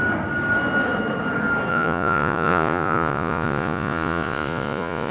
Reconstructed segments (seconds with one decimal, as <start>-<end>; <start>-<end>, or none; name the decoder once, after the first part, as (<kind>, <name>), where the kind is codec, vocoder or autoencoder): 1.7-5.1 (vocoder, Vocos)